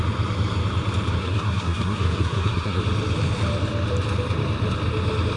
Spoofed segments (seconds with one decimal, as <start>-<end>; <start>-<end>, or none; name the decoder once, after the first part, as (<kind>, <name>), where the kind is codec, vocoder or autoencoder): 1.2-2.8 (codec, SNAC)